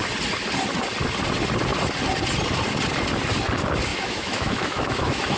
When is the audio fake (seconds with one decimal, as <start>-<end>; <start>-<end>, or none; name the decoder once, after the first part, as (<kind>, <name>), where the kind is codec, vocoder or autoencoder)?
3.9-5.4 (autoencoder, DAC-VAE)

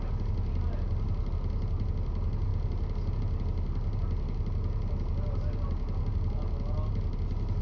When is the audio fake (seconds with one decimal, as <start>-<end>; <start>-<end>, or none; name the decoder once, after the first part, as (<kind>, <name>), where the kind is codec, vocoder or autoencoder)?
none

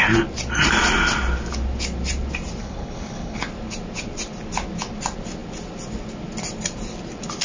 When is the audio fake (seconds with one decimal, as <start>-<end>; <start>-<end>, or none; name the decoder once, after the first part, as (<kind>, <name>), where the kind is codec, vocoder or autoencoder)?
2.6-3.4 (codec, HILCodec)

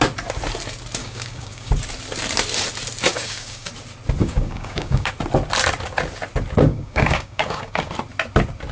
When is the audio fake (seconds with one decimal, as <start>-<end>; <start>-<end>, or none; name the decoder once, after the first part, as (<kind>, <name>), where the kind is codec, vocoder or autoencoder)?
1.0-1.7 (codec, DAC); 3.1-3.7; 4.2-5.1; 6.7-7.9